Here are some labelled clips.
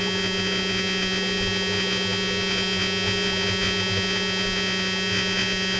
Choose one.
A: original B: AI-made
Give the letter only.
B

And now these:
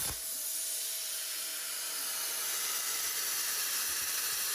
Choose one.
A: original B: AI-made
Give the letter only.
A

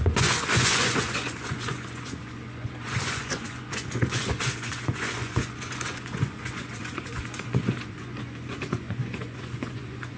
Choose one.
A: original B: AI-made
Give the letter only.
B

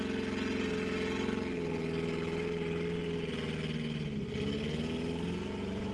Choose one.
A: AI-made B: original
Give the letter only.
B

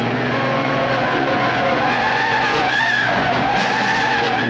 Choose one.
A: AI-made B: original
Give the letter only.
A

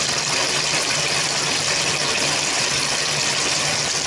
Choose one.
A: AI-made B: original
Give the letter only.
B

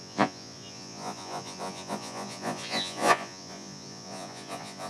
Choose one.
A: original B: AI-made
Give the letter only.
B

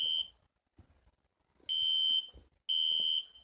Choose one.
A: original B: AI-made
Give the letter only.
A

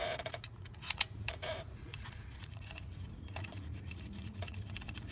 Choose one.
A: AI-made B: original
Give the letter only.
A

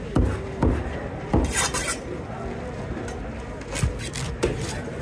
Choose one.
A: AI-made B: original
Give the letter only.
B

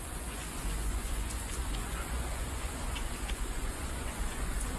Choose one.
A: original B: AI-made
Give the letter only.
B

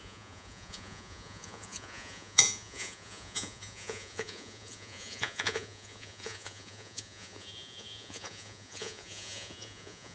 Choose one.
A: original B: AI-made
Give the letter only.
B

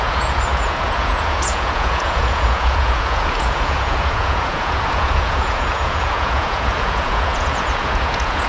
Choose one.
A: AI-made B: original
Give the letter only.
A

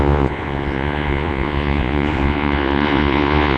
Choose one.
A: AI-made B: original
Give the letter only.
A